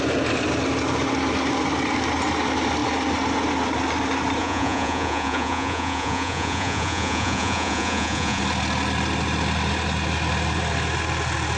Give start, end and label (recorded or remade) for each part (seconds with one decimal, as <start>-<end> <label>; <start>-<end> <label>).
0.0-4.4 recorded; 4.4-8.4 remade; 8.4-11.6 recorded